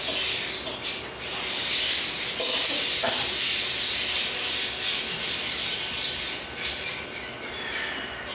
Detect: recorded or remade recorded